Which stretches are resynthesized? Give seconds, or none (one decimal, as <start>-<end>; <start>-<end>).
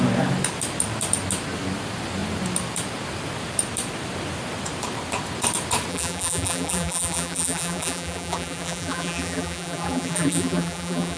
5.9-11.2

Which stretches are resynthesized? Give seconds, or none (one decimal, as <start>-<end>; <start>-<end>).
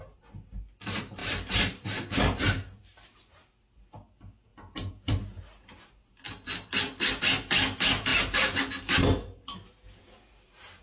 1.2-3.2; 8.1-8.7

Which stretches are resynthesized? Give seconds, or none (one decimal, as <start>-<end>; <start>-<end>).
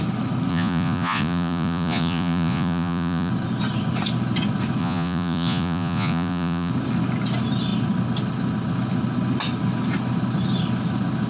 0.5-3.3; 4.8-6.7